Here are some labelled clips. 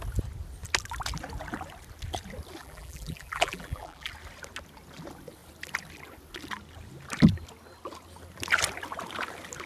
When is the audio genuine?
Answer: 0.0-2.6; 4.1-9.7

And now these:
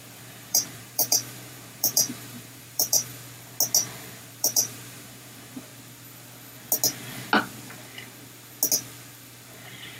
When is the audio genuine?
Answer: 3.1-4.1; 5.7-10.0

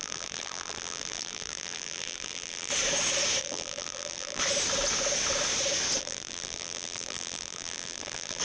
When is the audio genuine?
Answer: 2.7-3.4; 4.4-6.0

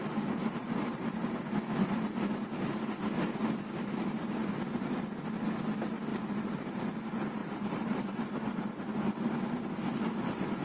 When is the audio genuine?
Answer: 0.0-0.4; 2.0-6.1; 6.7-7.4; 8.2-10.6

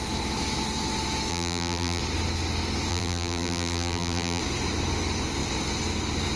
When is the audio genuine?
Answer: 0.0-1.3; 2.0-2.9; 4.4-6.4